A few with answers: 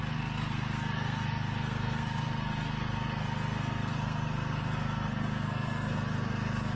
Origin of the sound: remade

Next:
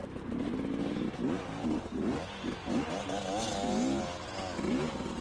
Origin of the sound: recorded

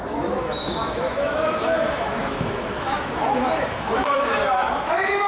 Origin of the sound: remade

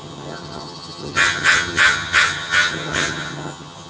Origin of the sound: remade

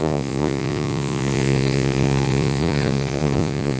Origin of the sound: remade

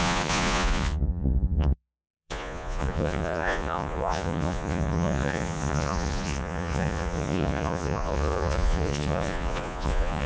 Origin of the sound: remade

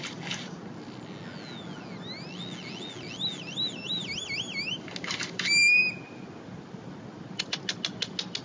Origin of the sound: recorded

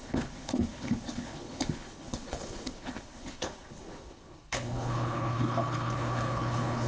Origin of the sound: remade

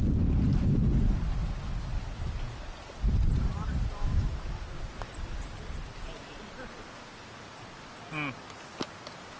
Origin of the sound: recorded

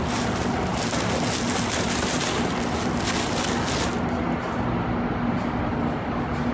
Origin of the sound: recorded